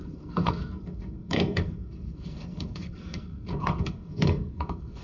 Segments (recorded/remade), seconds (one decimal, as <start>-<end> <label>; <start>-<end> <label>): 0.0-5.0 remade